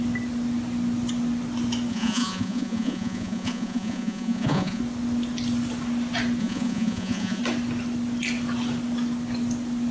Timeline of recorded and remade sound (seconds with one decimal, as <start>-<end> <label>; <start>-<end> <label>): 0.0-1.9 recorded; 1.9-4.8 remade; 4.8-6.4 recorded; 6.4-7.4 remade; 7.4-9.9 recorded